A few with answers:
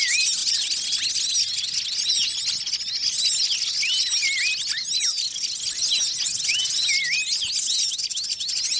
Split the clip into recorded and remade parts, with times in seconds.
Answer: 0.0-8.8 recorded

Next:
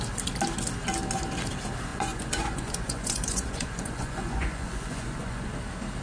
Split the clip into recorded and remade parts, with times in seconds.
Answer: 0.0-1.9 recorded; 1.9-5.5 remade; 5.5-6.0 recorded